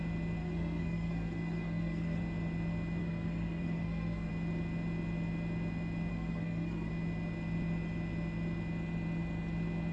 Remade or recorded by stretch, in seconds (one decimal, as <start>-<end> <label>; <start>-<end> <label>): 0.0-0.4 recorded; 0.4-2.2 remade; 2.2-3.0 recorded; 3.0-4.3 remade; 4.3-6.1 recorded; 6.1-6.9 remade; 6.9-9.9 recorded